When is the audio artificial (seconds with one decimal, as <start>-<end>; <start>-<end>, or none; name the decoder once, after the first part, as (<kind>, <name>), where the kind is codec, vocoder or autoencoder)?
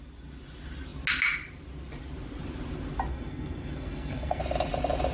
3.1-4.4 (codec, SNAC)